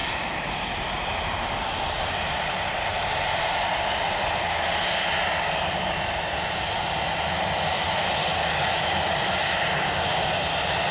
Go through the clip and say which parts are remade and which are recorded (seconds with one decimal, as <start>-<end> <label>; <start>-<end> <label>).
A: 0.0-10.9 recorded